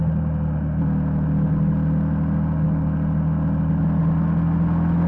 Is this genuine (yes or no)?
yes